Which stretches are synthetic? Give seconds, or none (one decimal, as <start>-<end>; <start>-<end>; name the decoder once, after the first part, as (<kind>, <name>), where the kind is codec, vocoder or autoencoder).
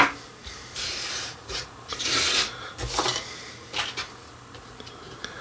0.4-2.1 (vocoder, BigVGAN v2)